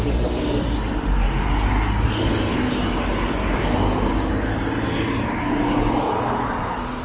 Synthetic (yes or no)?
no